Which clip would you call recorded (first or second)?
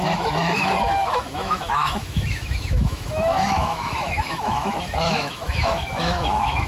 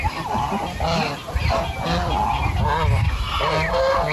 second